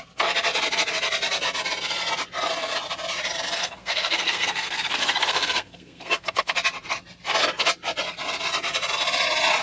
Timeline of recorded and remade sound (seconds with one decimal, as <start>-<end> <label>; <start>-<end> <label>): 0.0-3.6 recorded; 3.6-6.5 remade; 6.5-9.6 recorded